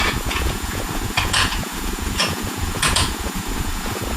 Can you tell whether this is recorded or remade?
remade